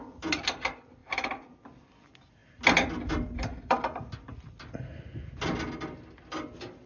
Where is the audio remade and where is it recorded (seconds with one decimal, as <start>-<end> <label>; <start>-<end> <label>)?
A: 0.0-1.0 recorded; 1.0-1.6 remade; 1.6-6.9 recorded